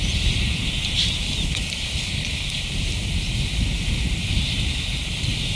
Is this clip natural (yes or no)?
no